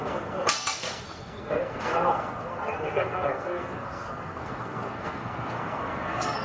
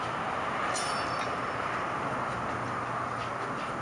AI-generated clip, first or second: first